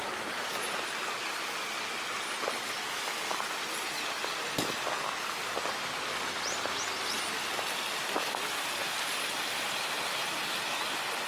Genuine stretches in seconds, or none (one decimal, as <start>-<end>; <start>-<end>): 0.0-11.3

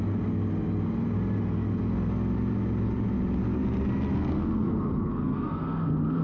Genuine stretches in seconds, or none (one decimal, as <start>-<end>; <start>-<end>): 0.0-4.1

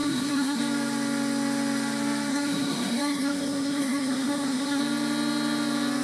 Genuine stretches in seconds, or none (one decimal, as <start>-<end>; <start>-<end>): 0.6-2.3; 4.8-6.0

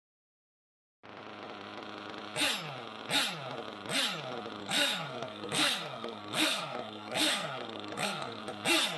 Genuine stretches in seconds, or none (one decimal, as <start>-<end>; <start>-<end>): 0.0-4.6; 8.4-9.0

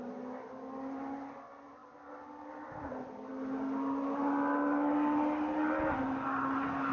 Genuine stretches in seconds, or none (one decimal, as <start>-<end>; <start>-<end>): 0.0-6.9

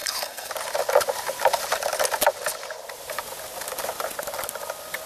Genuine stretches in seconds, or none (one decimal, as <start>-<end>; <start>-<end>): 0.5-5.1

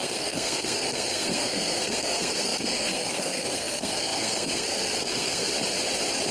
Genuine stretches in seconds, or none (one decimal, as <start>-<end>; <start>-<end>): 5.5-6.3

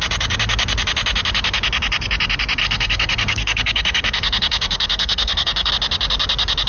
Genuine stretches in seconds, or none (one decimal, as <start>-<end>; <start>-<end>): 0.0-2.6; 5.7-6.7